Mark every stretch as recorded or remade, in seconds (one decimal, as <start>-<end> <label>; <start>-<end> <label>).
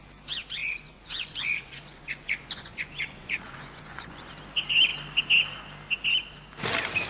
0.0-0.6 recorded; 0.6-4.3 remade; 4.3-7.1 recorded